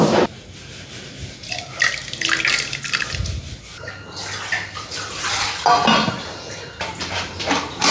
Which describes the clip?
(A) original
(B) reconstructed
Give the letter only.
A